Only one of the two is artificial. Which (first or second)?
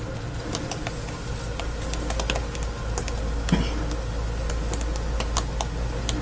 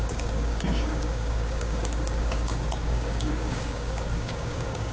second